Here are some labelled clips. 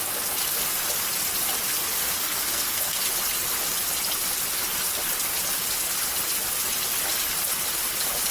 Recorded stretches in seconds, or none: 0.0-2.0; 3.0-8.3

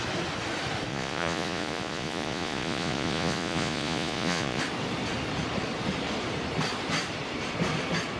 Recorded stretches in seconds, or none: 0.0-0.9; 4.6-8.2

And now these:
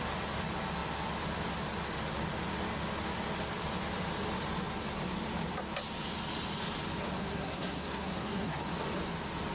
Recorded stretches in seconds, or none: 0.0-7.2; 8.6-9.5

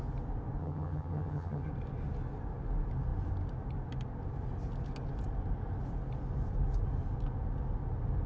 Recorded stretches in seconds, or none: 0.0-0.6; 1.7-8.3

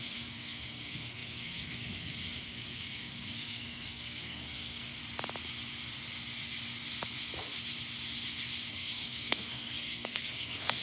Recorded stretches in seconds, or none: 5.0-8.7

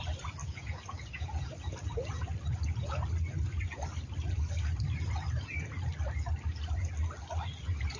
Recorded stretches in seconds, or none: 0.0-0.4; 1.5-8.0